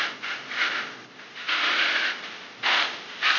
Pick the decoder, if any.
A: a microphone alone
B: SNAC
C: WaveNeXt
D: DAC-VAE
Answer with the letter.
A